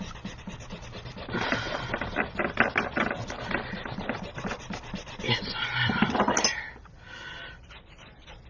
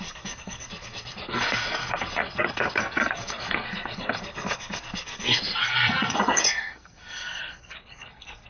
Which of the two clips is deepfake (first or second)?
second